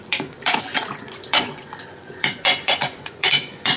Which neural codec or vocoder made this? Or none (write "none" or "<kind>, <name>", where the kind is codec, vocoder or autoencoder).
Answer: vocoder, Vocos